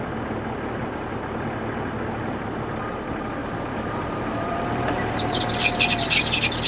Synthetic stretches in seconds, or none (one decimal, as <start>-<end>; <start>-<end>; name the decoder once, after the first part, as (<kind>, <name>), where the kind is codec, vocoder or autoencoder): 3.4-5.4 (vocoder, BigVGAN v2)